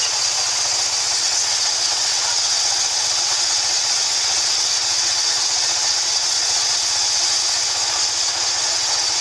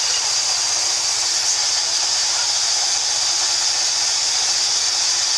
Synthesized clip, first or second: first